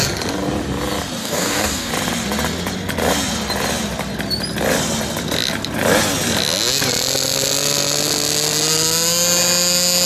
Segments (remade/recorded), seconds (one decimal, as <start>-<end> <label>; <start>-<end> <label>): 0.0-1.2 recorded; 1.2-1.9 remade; 1.9-10.1 recorded